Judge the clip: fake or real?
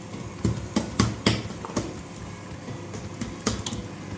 real